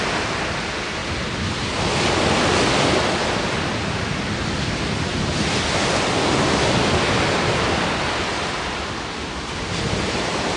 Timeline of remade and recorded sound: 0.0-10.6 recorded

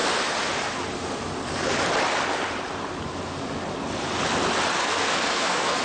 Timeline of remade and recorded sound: 0.0-4.8 recorded; 4.8-5.8 remade

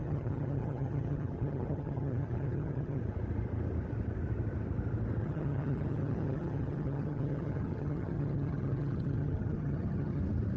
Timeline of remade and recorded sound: 0.0-3.0 remade; 3.0-5.2 recorded; 5.2-10.2 remade; 10.2-10.6 recorded

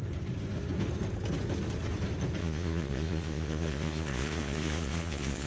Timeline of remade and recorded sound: 0.0-2.4 recorded; 2.4-5.5 remade

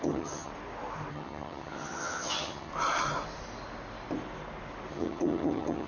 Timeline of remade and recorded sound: 0.0-0.5 remade; 0.5-1.1 recorded; 1.1-2.7 remade; 2.7-4.9 recorded; 4.9-5.9 remade

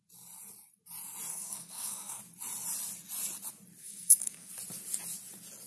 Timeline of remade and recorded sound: 0.0-1.3 recorded; 1.3-2.2 remade; 2.2-3.8 recorded; 3.8-4.5 remade; 4.5-5.7 recorded

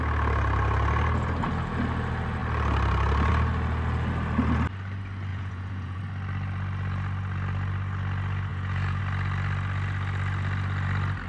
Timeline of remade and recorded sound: 0.0-5.3 recorded; 5.3-6.0 remade; 6.0-8.5 recorded; 8.5-9.0 remade; 9.0-11.3 recorded

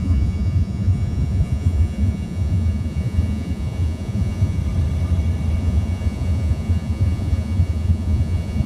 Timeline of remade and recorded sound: 0.0-4.6 remade; 4.6-5.6 recorded; 5.6-8.7 remade